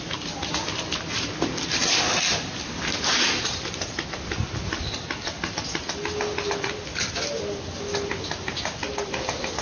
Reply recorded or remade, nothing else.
recorded